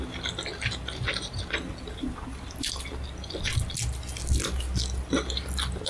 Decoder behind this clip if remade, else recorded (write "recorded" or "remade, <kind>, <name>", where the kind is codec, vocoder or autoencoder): recorded